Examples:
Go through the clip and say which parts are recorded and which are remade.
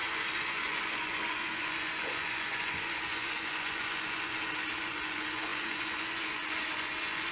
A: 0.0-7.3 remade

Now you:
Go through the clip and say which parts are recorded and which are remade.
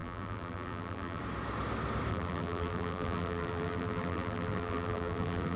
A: 0.0-1.2 remade; 1.2-2.1 recorded; 2.1-5.6 remade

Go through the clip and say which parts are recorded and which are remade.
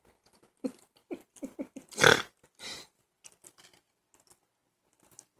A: 0.0-5.4 recorded